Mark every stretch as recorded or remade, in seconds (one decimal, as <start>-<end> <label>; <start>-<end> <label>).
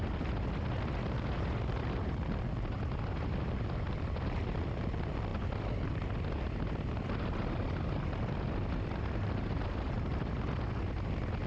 0.0-11.5 recorded